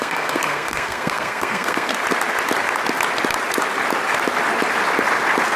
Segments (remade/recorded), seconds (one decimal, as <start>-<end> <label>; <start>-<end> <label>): 0.0-1.9 remade; 1.9-5.6 recorded